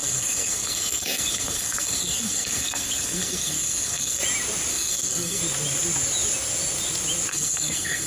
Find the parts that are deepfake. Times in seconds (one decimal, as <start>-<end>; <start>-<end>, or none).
0.0-4.2; 4.7-5.4; 7.3-8.1